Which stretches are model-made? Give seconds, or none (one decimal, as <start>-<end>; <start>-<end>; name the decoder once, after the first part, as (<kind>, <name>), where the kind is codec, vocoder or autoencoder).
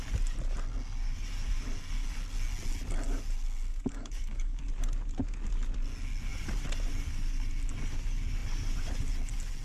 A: 3.7-4.6 (codec, DAC)